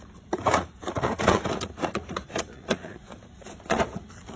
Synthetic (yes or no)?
yes